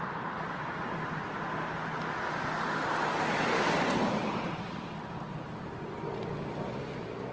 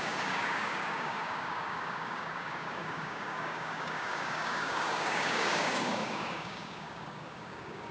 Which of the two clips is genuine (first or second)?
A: first